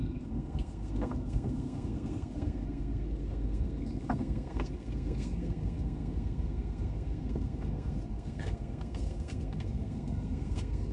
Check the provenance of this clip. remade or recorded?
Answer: remade